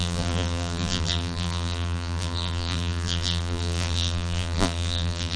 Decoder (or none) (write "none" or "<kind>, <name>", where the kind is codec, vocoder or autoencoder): vocoder, BigVGAN v2